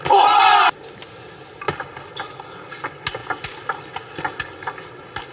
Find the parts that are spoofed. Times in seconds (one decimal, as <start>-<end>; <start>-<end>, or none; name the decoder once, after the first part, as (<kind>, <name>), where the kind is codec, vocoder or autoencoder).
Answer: none